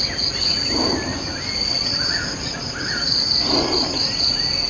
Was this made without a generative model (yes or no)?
yes